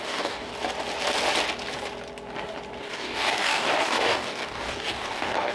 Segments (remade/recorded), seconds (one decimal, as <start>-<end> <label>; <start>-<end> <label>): 0.0-0.5 remade; 0.5-2.8 recorded; 2.8-5.5 remade

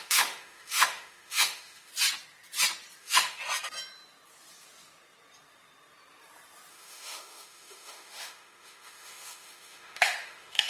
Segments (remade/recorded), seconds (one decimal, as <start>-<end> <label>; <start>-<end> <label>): 0.0-1.9 remade; 1.9-3.0 recorded; 3.0-3.4 remade; 3.4-6.7 recorded; 6.7-10.7 remade

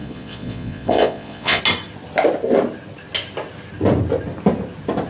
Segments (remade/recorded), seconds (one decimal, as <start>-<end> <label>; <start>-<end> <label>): 0.0-1.6 remade; 1.6-5.1 recorded

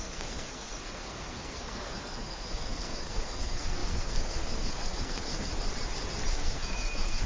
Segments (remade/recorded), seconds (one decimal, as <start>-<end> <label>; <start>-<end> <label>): 0.0-5.5 remade; 5.5-6.3 recorded; 6.3-7.3 remade

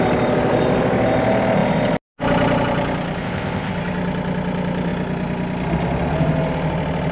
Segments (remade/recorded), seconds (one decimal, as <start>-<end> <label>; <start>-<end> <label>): 0.0-3.2 recorded; 3.2-3.7 remade; 3.7-7.1 recorded

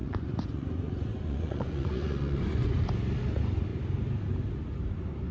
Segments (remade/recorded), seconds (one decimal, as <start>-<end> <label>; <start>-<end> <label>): 0.0-2.8 remade; 2.8-5.3 recorded

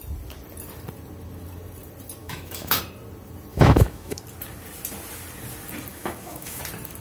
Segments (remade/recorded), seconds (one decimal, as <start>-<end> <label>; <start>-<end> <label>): 0.0-2.2 recorded; 2.2-2.8 remade; 2.8-3.5 recorded; 3.5-4.2 remade; 4.2-5.9 recorded; 5.9-6.6 remade; 6.6-7.0 recorded

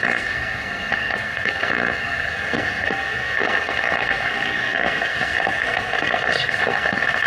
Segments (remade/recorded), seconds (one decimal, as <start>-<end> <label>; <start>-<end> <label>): 0.0-7.3 remade